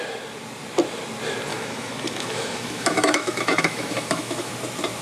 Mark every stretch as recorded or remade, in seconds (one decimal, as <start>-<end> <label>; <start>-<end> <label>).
0.0-1.5 recorded; 1.5-4.5 remade; 4.5-5.0 recorded